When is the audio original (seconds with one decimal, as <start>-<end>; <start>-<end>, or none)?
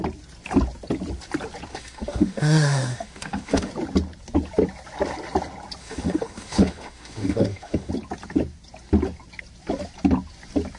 0.0-1.7; 3.7-5.8; 7.9-10.8